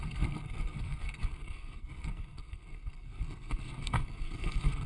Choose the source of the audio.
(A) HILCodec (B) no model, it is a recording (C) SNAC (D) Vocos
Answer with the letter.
C